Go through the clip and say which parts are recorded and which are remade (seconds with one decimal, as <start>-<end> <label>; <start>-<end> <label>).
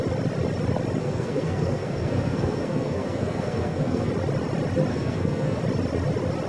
0.0-1.0 recorded; 1.0-4.1 remade; 4.1-4.9 recorded; 4.9-5.6 remade; 5.6-6.5 recorded